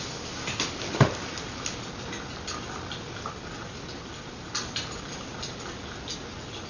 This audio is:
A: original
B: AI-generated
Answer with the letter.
A